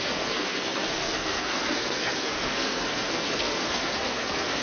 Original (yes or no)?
no